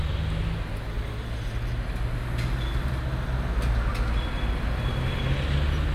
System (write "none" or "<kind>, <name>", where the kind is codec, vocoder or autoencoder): none